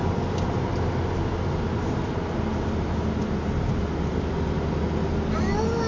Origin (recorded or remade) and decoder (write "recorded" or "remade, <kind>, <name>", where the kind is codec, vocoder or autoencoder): recorded